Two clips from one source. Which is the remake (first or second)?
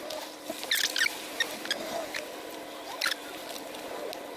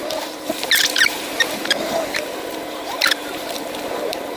second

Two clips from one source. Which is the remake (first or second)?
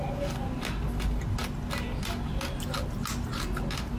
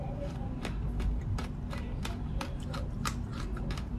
second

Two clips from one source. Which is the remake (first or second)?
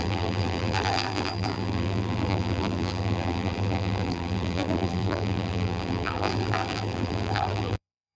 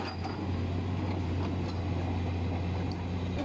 first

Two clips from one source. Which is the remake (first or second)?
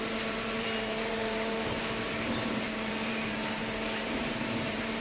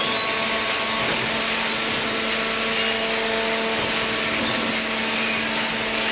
first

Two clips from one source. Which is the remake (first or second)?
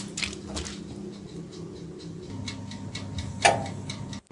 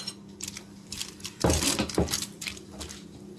second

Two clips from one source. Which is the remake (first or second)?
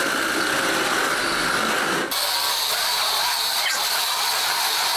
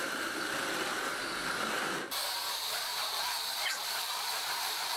second